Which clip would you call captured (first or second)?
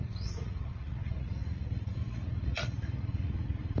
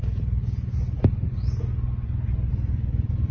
second